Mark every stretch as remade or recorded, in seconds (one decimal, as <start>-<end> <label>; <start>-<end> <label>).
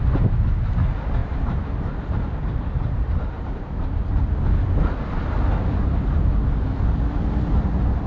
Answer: 0.0-1.2 recorded; 1.2-4.3 remade; 4.3-8.1 recorded